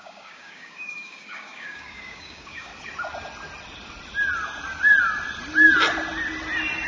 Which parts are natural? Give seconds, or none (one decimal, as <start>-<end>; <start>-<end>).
2.7-6.9